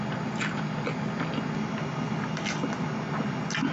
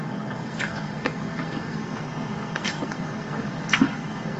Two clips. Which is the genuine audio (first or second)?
first